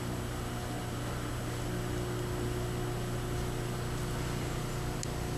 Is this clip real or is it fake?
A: real